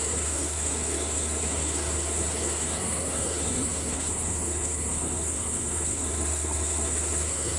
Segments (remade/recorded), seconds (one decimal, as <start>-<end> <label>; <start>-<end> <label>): 0.0-7.6 remade